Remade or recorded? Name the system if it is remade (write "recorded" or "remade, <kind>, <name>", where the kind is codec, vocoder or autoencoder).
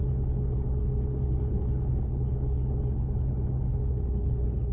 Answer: remade, codec, HILCodec